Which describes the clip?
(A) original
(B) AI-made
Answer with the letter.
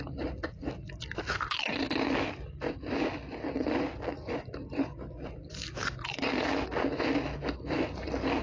B